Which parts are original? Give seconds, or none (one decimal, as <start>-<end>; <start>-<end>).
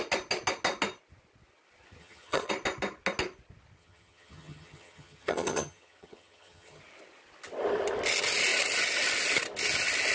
0.0-2.0; 2.5-3.8; 6.8-10.1